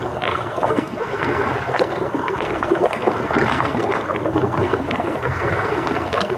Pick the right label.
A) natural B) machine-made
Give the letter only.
B